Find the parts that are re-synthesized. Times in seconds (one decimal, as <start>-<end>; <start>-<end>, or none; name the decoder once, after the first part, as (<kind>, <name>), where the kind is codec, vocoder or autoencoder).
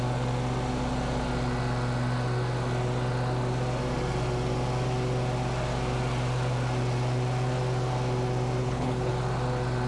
8.6-9.1 (codec, HILCodec)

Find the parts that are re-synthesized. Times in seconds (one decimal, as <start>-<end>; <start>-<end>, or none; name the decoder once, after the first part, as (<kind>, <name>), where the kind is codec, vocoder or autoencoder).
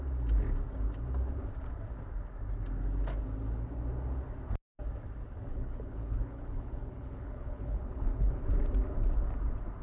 5.5-8.4 (codec, HILCodec)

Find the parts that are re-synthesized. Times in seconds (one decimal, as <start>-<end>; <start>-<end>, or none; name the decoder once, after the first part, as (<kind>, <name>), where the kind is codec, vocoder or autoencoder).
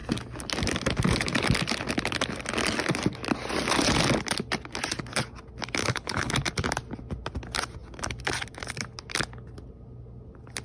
5.8-6.3 (codec, HILCodec)